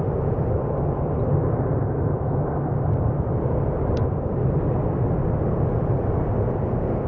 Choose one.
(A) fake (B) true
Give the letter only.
B